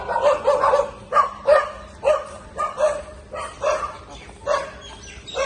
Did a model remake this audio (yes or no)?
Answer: yes